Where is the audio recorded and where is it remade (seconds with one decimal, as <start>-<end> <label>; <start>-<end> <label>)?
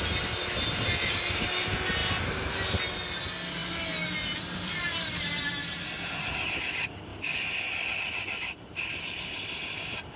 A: 0.0-2.0 recorded; 2.0-2.8 remade; 2.8-3.6 recorded; 3.6-5.3 remade; 5.3-7.1 recorded; 7.1-10.2 remade